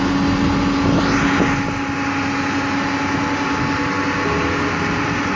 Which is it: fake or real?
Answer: real